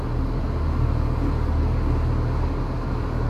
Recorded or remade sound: recorded